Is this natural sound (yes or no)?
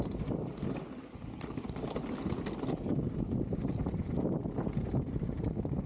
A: yes